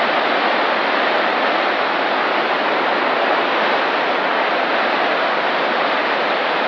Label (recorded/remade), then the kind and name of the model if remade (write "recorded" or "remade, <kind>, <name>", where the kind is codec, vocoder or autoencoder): recorded